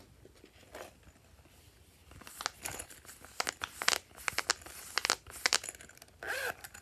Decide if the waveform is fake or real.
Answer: real